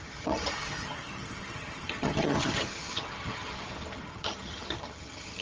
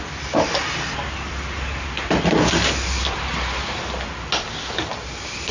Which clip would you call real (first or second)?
second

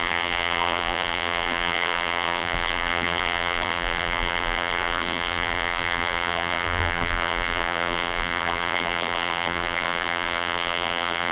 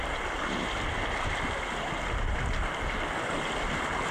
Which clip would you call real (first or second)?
second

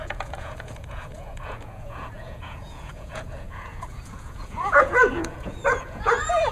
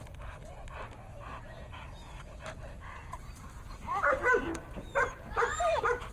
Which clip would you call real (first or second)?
second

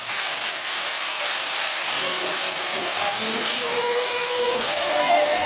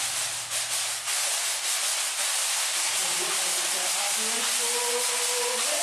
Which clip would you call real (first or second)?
second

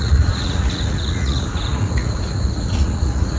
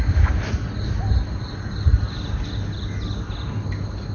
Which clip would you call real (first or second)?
second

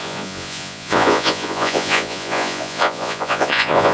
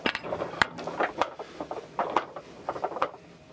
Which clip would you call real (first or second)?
second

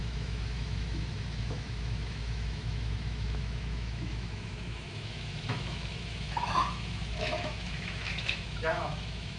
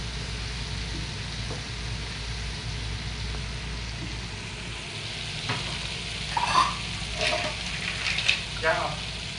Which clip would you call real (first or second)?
second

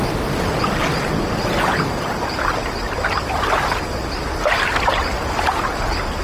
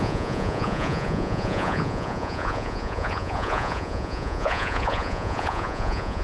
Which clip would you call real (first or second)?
first